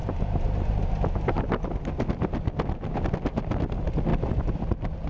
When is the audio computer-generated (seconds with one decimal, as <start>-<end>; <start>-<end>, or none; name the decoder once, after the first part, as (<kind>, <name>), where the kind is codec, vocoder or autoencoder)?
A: 4.1-5.1 (vocoder, BigVGAN v2)